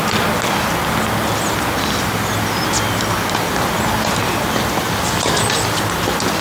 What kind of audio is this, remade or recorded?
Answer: recorded